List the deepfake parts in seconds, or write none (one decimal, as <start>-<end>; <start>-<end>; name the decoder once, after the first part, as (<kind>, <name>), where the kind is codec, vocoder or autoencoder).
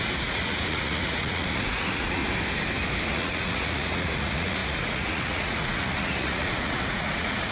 0.0-2.2 (vocoder, Vocos); 3.1-7.5